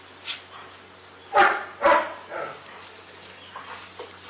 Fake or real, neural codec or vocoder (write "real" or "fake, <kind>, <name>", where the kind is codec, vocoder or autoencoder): real